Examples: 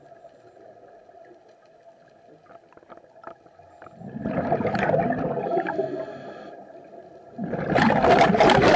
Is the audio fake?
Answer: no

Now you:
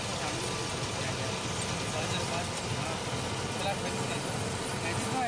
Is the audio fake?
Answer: no